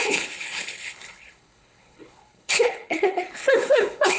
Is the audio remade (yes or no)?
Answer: yes